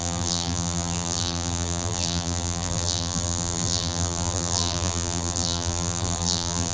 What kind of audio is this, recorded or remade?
remade